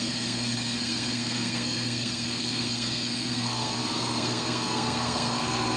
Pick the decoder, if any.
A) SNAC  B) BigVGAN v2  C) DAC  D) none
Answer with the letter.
A